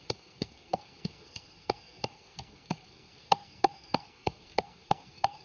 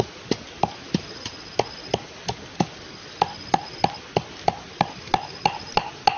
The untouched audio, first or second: second